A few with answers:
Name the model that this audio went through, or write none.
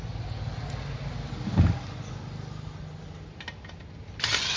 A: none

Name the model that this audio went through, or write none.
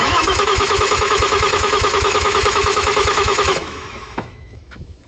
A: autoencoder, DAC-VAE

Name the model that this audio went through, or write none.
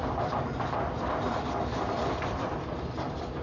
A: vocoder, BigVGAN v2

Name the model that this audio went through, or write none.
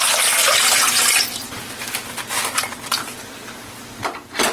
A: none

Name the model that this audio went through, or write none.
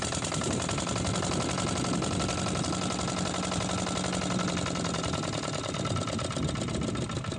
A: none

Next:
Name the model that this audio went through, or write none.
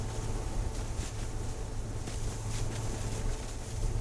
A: none